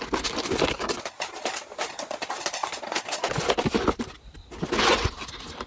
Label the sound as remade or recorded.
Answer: recorded